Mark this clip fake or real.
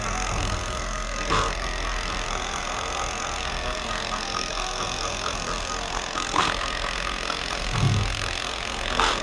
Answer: fake